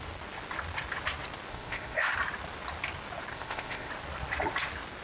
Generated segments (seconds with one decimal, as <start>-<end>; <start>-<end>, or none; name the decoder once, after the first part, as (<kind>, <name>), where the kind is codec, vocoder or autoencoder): 1.5-2.1 (codec, ZipCodec); 3.3-3.9